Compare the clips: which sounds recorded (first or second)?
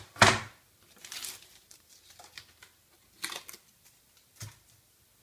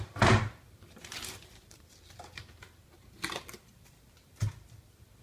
first